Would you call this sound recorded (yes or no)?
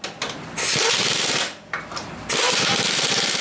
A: yes